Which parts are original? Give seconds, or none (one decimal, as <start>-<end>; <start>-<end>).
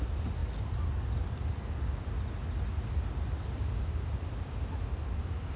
0.0-5.6